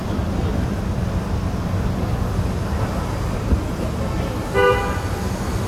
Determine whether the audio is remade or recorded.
recorded